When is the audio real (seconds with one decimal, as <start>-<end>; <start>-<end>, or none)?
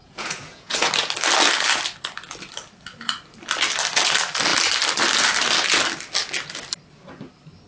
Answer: 0.9-7.7